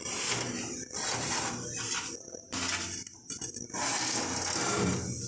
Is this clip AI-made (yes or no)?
no